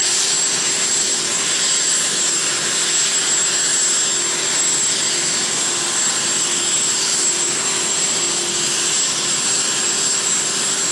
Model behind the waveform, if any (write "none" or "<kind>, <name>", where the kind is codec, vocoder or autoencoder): none